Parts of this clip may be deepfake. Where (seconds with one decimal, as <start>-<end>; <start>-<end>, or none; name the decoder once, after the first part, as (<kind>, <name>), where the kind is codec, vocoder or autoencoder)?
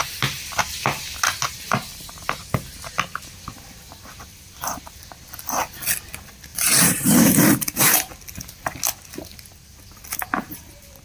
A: 6.5-7.8 (vocoder, BigVGAN v2)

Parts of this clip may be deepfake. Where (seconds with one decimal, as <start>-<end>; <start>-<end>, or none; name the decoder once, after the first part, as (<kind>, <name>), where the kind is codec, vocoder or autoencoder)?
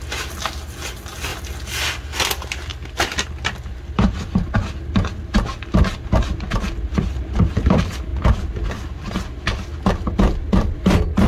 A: none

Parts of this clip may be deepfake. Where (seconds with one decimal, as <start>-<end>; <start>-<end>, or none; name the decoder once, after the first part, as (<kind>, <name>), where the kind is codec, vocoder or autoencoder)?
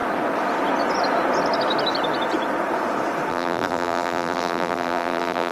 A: 3.3-5.5 (vocoder, BigVGAN v2)